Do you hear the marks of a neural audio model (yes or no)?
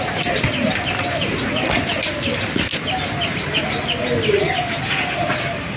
no